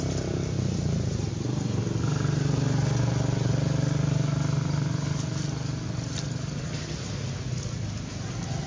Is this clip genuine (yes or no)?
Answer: yes